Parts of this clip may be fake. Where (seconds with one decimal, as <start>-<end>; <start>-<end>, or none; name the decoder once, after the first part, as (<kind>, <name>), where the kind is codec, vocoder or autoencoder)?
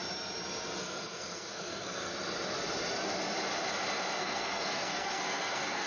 0.8-2.1 (codec, SNAC); 4.2-5.9